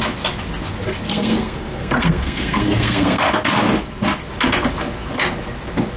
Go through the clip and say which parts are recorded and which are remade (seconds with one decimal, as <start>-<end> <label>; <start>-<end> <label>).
0.0-1.1 recorded; 1.1-3.3 remade; 3.3-6.0 recorded